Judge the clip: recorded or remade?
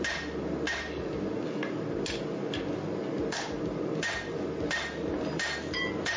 recorded